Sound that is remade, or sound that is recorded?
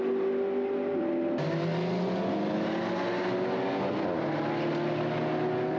recorded